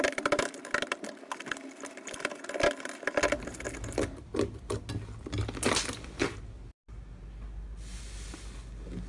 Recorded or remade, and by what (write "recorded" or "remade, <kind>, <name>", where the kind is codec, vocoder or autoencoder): recorded